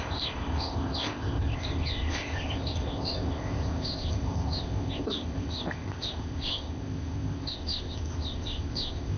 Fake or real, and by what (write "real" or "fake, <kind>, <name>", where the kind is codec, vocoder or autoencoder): fake, codec, ZipCodec